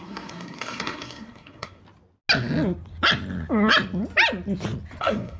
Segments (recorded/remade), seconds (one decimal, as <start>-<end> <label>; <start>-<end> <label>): 0.0-1.8 remade; 1.8-5.0 recorded; 5.0-5.4 remade